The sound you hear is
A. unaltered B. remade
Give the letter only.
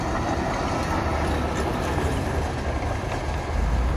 A